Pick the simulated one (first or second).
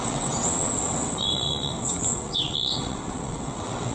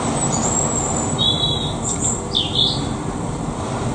first